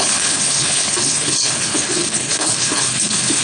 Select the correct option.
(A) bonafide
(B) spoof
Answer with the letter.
B